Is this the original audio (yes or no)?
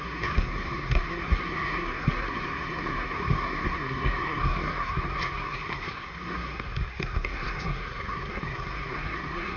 no